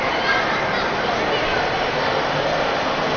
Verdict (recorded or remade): recorded